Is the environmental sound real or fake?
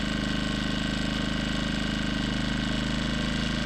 real